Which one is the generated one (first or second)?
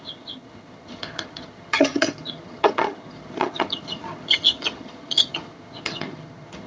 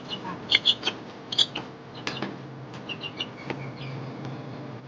first